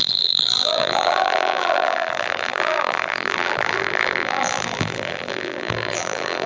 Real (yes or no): no